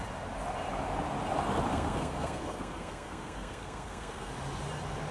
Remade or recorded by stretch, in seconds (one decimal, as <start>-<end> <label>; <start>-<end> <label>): 0.0-1.7 recorded; 1.7-4.3 remade; 4.3-5.1 recorded